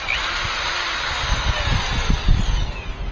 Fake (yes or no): no